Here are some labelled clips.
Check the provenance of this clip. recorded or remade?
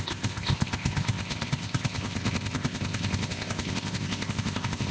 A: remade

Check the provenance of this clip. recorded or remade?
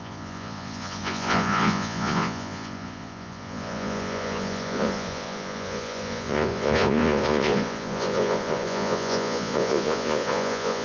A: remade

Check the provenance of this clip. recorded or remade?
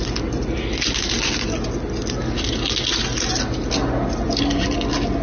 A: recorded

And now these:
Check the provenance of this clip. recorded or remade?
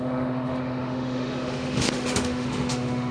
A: remade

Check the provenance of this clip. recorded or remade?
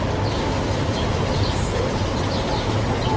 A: recorded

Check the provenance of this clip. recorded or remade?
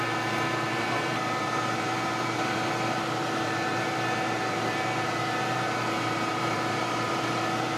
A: remade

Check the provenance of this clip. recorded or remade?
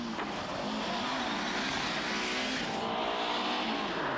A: recorded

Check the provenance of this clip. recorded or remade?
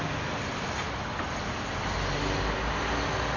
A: recorded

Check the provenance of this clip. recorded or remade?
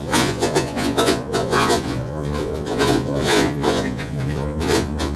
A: remade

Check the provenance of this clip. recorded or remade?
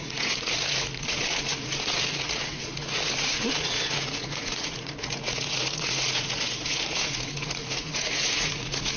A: remade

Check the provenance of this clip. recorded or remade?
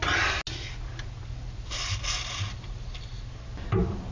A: recorded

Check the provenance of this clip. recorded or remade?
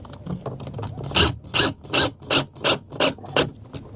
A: recorded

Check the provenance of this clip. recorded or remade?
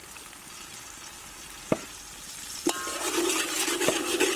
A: recorded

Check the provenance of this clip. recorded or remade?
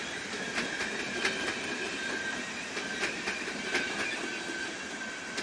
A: recorded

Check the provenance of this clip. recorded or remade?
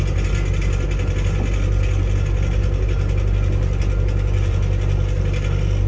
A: recorded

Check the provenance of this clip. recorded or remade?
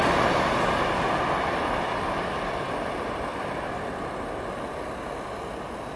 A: recorded